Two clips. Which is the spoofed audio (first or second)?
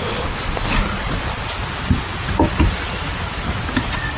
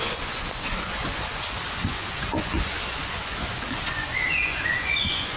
second